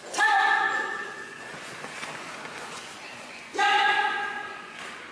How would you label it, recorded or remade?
remade